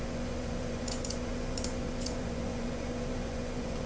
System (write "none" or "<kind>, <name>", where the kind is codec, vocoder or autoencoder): vocoder, Vocos